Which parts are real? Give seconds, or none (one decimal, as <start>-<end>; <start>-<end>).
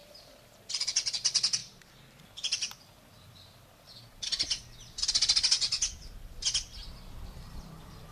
0.6-1.6; 2.2-8.1